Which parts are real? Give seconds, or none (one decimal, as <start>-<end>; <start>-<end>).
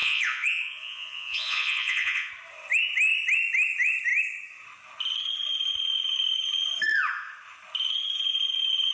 2.3-8.9